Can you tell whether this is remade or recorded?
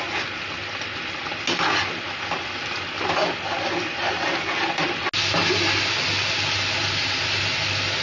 recorded